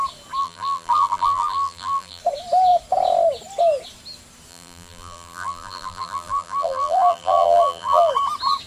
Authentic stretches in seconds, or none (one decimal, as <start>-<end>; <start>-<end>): 0.0-0.4; 2.2-4.5; 8.1-8.7